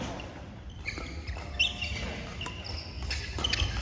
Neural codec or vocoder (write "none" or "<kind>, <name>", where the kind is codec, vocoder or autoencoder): none